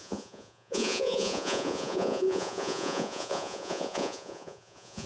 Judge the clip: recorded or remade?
remade